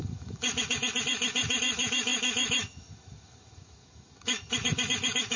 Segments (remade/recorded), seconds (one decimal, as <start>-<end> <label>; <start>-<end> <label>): 0.0-5.4 remade